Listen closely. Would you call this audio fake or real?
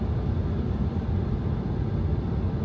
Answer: real